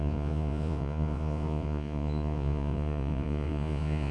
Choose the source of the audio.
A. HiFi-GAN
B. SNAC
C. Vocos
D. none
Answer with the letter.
C